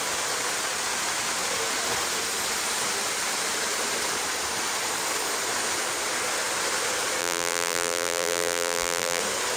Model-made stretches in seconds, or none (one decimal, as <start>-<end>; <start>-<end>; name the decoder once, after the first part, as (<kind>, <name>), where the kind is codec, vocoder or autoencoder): 7.2-9.2 (vocoder, BigVGAN v2)